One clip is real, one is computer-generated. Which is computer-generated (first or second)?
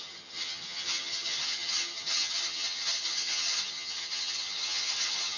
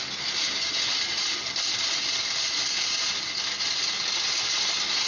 first